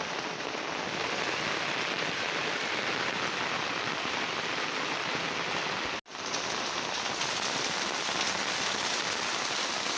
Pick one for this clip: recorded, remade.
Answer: recorded